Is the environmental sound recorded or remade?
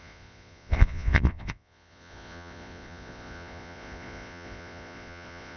remade